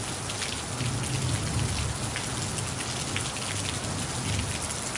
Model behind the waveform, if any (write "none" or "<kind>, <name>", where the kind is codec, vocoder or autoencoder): none